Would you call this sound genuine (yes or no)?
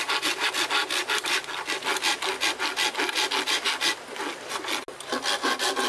yes